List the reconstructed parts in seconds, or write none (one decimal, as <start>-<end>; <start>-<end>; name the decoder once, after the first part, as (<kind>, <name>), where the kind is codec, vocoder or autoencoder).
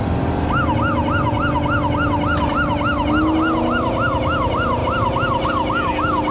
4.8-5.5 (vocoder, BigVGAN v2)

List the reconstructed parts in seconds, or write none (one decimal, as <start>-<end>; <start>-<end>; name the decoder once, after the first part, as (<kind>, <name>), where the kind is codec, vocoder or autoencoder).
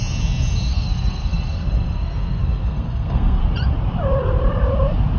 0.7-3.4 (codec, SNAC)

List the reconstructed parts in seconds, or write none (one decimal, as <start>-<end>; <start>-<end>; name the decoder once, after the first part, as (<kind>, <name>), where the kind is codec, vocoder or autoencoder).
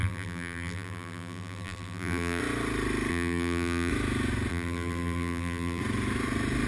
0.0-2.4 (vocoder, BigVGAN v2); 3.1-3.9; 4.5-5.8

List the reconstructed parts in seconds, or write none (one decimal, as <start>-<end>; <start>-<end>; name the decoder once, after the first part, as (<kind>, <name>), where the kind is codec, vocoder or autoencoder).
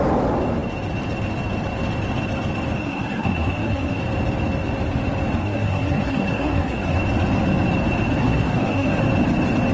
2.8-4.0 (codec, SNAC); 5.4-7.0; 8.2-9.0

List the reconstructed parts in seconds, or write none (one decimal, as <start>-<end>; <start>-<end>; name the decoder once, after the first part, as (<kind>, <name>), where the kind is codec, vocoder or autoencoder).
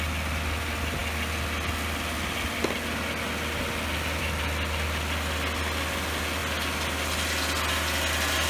none